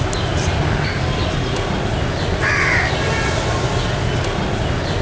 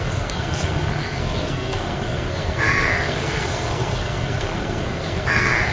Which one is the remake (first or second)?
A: second